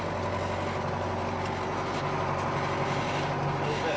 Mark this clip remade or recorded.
recorded